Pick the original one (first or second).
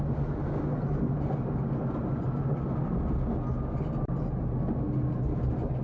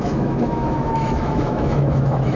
first